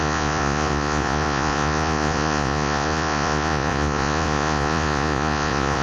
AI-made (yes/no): yes